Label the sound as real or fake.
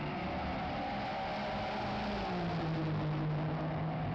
real